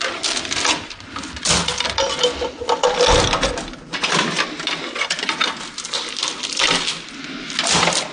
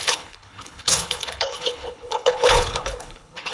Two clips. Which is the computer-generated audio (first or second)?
second